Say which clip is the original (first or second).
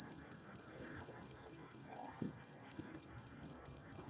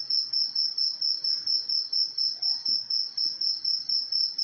second